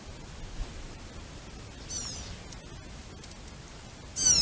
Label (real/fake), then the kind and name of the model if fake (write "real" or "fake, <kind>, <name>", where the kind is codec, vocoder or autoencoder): real